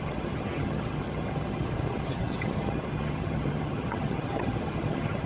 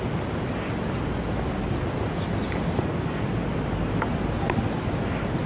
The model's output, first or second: first